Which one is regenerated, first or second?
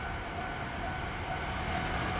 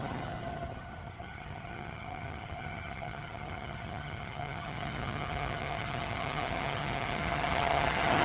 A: second